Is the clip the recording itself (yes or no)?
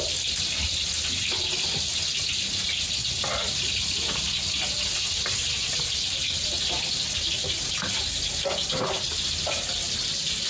yes